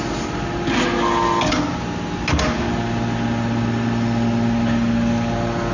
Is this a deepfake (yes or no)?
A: no